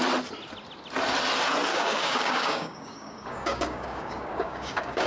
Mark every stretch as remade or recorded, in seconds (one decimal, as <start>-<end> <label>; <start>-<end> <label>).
0.0-1.7 recorded; 1.7-5.1 remade